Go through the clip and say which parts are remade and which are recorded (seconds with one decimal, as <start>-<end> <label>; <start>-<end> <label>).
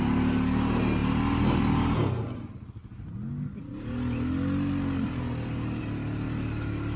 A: 0.0-7.0 recorded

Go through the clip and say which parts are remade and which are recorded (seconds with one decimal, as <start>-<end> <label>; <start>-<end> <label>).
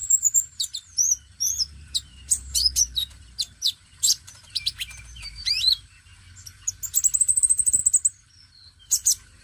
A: 0.0-6.1 remade; 6.1-7.2 recorded; 7.2-7.8 remade; 7.8-8.8 recorded; 8.8-9.4 remade